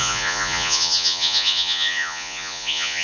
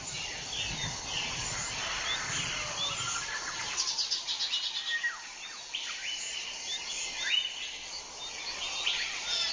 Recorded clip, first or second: second